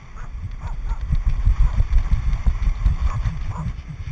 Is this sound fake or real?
real